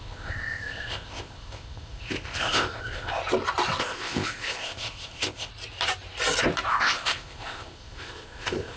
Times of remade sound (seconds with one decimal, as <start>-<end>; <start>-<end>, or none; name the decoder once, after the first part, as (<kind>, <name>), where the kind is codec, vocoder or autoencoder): 0.0-3.2 (codec, ZipCodec); 3.8-5.5; 6.7-8.8